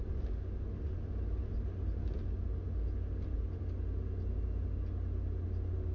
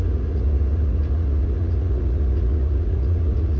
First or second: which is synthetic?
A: second